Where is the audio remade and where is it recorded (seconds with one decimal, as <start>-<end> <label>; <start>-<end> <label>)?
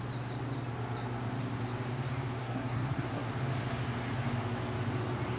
0.0-2.4 recorded; 2.4-3.3 remade; 3.3-5.4 recorded